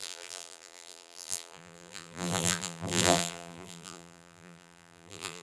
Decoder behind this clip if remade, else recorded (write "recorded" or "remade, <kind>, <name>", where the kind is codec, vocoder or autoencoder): remade, vocoder, BigVGAN v2